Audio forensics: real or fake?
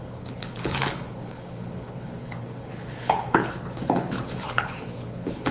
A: fake